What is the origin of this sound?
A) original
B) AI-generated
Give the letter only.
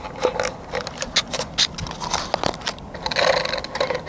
A